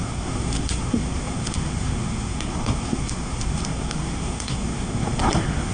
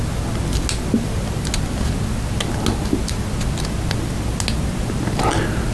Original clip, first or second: second